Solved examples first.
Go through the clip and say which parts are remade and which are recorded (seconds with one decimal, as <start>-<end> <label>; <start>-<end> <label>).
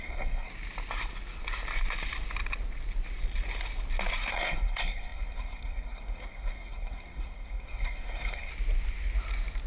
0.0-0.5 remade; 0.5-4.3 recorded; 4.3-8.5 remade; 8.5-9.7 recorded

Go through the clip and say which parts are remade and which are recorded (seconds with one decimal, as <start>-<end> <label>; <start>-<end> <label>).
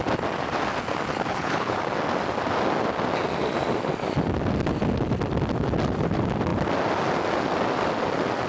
0.0-1.3 recorded; 1.3-1.8 remade; 1.8-8.5 recorded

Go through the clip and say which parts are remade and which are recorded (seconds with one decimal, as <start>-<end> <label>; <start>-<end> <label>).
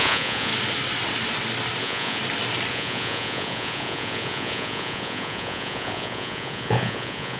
0.0-0.5 remade; 0.5-1.8 recorded; 1.8-2.2 remade; 2.2-2.7 recorded; 2.7-7.4 remade